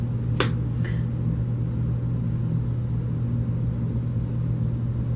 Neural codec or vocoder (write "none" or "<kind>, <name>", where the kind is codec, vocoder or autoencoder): none